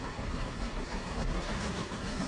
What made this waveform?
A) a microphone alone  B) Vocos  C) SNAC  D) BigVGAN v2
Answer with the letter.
C